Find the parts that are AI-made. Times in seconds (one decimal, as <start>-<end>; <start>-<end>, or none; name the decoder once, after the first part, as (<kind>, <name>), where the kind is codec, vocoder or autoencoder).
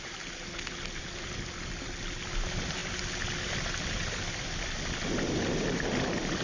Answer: none